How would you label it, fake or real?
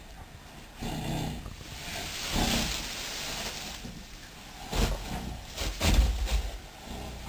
real